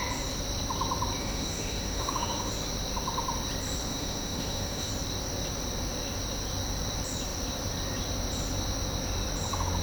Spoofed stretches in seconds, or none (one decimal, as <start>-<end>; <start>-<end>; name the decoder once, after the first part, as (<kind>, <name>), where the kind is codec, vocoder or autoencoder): 1.2-2.5 (autoencoder, DAC-VAE); 3.9-4.9